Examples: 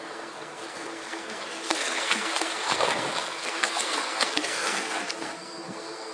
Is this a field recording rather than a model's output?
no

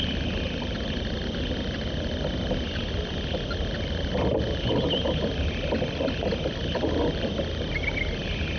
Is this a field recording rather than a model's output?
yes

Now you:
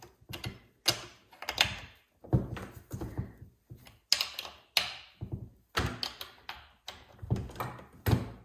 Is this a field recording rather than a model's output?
yes